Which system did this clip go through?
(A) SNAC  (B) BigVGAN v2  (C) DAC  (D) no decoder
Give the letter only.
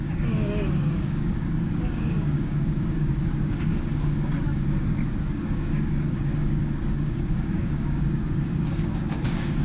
C